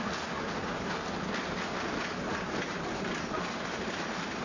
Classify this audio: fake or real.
real